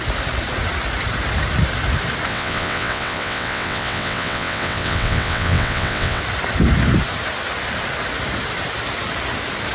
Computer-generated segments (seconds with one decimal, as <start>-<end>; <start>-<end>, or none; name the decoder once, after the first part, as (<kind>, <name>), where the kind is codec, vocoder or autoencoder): 2.3-6.2 (vocoder, WaveNeXt)

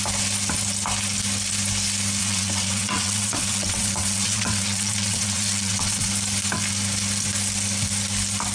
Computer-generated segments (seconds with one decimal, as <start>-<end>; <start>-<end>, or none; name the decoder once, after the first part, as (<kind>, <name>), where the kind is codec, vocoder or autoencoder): 2.2-6.1 (vocoder, WaveNeXt)